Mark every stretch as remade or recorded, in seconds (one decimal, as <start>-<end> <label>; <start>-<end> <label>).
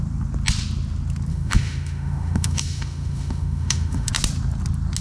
0.0-1.3 recorded; 1.3-4.1 remade; 4.1-5.0 recorded